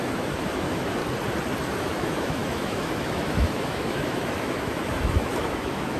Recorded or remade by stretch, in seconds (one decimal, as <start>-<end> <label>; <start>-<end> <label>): 0.0-1.0 remade; 1.0-1.8 recorded; 1.8-6.0 remade